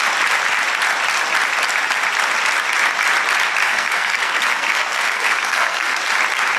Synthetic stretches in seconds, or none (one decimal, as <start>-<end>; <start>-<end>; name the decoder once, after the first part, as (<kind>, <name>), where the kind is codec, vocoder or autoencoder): 3.7-6.0 (codec, SNAC)